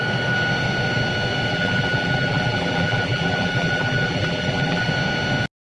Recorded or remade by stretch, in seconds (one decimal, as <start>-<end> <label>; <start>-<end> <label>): 0.0-1.5 recorded; 1.5-4.9 remade; 4.9-5.6 recorded